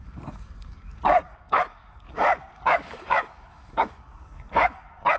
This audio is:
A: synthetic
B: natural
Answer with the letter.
A